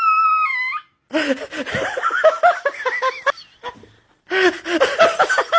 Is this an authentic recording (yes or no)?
yes